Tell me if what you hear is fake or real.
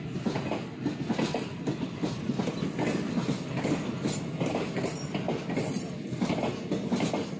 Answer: real